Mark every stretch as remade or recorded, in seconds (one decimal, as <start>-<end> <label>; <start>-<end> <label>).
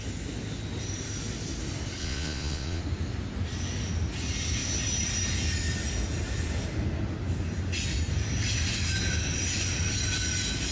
0.0-2.0 recorded; 2.0-2.8 remade; 2.8-10.7 recorded